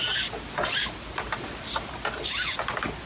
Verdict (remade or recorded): recorded